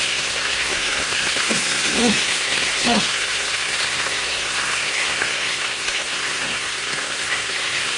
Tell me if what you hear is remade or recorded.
remade